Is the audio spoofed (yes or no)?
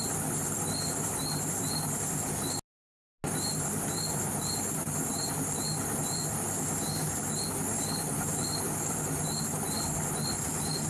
no